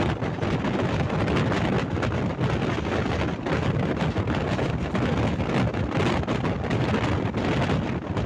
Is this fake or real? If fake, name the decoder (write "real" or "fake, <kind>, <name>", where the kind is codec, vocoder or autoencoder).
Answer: real